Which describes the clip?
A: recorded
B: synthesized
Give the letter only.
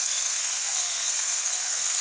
B